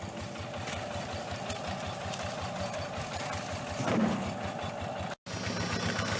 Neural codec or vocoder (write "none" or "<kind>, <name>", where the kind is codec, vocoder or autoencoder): none